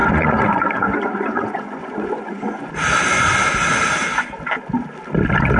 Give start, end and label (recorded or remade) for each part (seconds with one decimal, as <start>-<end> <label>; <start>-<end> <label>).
0.0-2.7 remade; 2.7-5.6 recorded